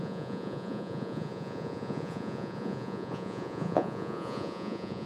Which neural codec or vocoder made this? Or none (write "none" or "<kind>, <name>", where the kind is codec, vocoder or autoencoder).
vocoder, Vocos